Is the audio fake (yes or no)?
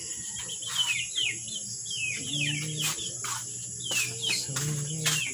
no